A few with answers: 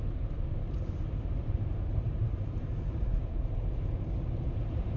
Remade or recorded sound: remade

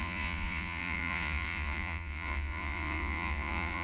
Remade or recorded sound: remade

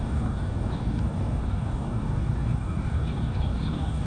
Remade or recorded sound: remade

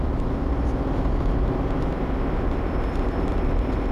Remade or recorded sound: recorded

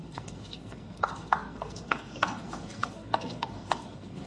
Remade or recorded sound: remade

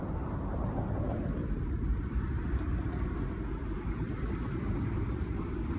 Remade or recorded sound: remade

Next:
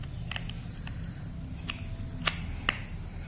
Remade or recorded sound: recorded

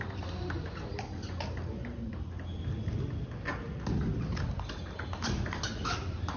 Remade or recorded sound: recorded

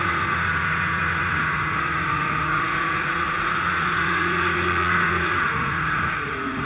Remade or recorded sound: remade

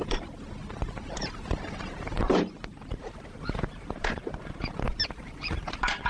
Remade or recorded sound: remade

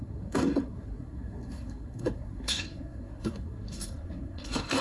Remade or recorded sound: remade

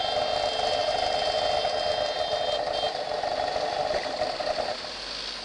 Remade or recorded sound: recorded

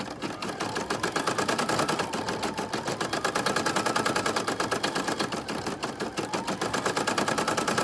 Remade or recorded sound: recorded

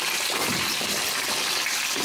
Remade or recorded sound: recorded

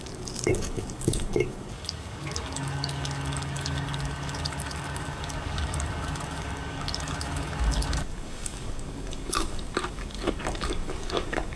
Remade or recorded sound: remade